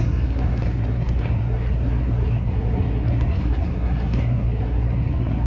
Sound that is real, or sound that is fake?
fake